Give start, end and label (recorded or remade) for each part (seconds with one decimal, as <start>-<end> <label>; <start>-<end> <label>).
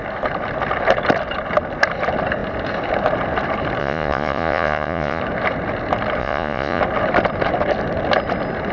0.0-3.8 recorded; 3.8-5.2 remade; 5.2-6.2 recorded; 6.2-6.8 remade; 6.8-8.7 recorded